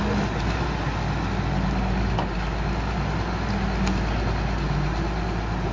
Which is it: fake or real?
real